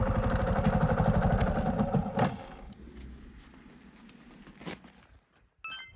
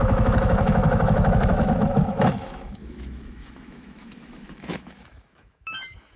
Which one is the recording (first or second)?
first